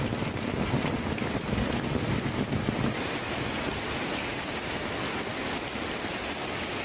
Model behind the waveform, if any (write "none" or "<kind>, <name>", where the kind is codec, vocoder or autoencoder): none